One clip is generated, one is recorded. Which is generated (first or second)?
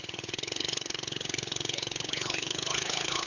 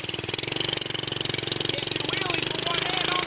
first